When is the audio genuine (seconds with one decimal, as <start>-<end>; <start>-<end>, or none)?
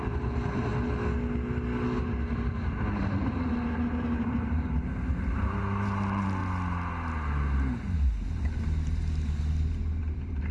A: 0.7-2.3; 6.4-10.0